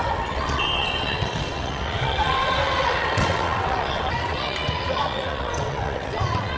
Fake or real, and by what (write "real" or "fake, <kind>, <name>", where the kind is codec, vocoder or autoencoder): fake, vocoder, WaveNeXt